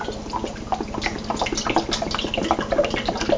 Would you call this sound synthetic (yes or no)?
no